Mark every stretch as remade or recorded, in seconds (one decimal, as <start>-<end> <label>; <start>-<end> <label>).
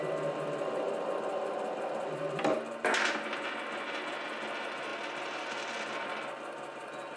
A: 0.0-7.2 recorded